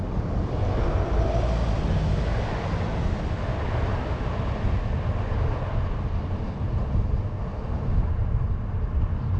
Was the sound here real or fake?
real